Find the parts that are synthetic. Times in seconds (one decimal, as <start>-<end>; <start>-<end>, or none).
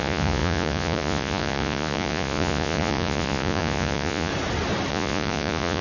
0.0-4.3; 4.9-5.8